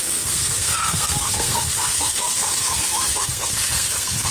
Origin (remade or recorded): remade